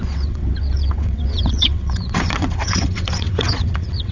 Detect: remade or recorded remade